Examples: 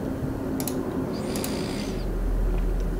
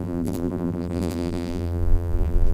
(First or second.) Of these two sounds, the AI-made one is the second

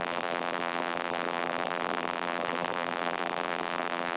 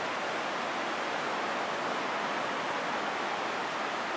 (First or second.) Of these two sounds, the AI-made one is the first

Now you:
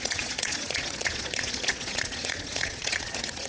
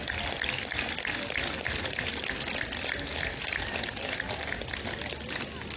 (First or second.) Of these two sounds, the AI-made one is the first